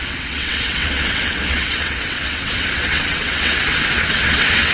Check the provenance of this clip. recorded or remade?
remade